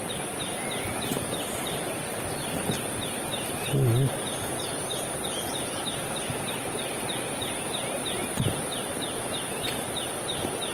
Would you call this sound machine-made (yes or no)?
no